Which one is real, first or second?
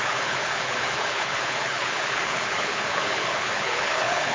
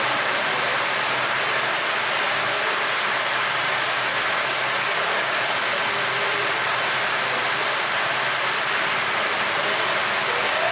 second